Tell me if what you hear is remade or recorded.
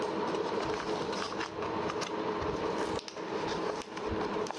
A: recorded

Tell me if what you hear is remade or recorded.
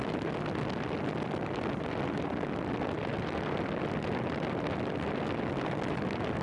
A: recorded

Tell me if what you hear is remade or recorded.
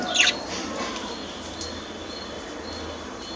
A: recorded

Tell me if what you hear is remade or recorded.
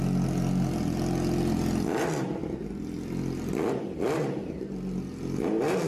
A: recorded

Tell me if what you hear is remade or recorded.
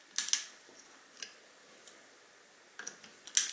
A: recorded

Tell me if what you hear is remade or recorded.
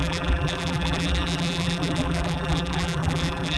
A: remade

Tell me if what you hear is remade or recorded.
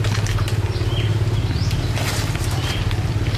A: remade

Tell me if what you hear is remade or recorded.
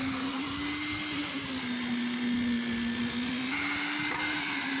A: recorded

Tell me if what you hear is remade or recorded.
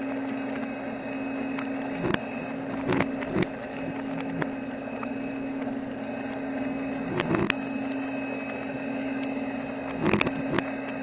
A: recorded